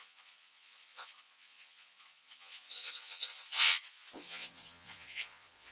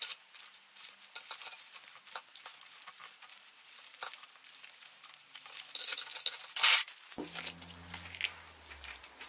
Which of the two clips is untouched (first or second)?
second